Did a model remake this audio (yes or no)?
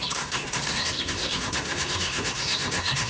yes